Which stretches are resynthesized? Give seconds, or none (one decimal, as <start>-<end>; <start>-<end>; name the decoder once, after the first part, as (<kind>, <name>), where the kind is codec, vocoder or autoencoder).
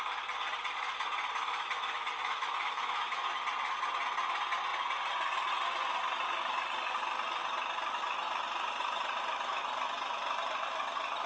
1.4-3.3 (autoencoder, DAC-VAE)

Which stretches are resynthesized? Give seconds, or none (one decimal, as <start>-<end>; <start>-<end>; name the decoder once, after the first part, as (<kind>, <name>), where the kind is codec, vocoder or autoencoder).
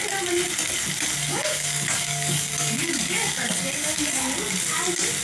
1.2-4.2 (codec, DAC)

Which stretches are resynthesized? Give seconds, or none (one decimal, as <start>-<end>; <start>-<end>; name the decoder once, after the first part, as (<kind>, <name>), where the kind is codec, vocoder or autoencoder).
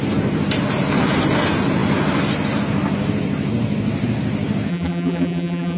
4.7-5.8 (vocoder, BigVGAN v2)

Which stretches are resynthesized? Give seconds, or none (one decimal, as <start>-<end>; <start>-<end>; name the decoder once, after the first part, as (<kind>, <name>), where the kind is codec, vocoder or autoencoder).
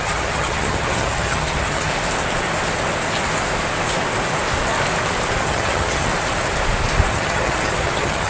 0.0-1.9 (vocoder, HiFi-GAN); 5.4-6.1; 7.1-8.3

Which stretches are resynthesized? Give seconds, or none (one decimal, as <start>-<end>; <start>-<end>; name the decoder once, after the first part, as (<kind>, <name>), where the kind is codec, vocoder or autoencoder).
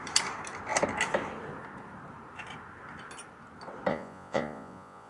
3.9-5.1 (vocoder, Vocos)